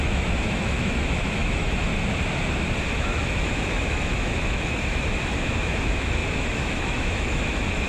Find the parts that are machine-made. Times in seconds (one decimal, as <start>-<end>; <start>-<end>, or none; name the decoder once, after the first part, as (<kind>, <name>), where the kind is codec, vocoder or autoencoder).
0.0-1.9 (autoencoder, DAC-VAE); 2.9-7.9